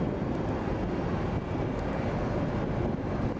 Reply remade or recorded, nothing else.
recorded